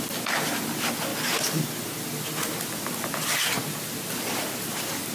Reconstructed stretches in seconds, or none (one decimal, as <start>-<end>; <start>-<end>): none